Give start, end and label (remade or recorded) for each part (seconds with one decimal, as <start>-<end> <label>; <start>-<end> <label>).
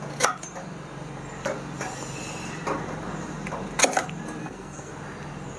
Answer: 0.0-4.4 recorded; 4.4-4.9 remade; 4.9-5.6 recorded